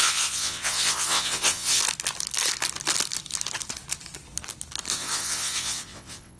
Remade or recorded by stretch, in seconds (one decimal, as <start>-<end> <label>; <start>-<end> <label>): 0.0-1.8 remade; 1.8-4.9 recorded; 4.9-6.4 remade